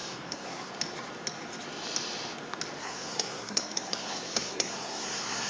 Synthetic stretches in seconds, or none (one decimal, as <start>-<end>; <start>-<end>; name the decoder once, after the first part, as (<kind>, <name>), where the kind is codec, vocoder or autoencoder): 0.0-0.7 (codec, SNAC); 2.8-5.5

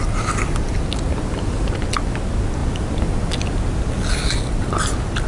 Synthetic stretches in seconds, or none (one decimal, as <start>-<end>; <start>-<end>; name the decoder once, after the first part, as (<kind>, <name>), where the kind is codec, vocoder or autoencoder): none